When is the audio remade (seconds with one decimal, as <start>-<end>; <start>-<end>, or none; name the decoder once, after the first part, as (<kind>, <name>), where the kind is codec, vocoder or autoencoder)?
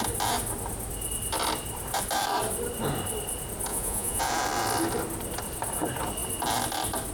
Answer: 3.7-4.2 (vocoder, Vocos)